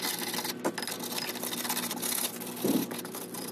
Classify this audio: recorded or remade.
recorded